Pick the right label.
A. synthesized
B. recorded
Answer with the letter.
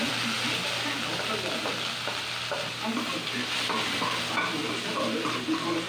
B